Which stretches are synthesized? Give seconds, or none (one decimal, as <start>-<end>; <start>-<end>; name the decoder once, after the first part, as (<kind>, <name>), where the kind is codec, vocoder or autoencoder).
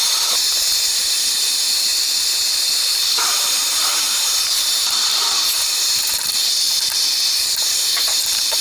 0.0-1.9 (vocoder, BigVGAN v2); 2.9-8.6